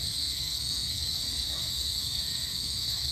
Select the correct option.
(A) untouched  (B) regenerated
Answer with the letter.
B